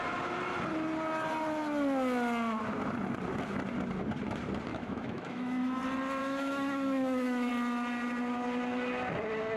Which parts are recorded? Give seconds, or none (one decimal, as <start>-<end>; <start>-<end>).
0.0-4.7; 5.8-6.2; 7.5-9.6